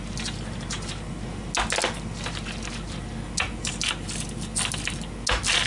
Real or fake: real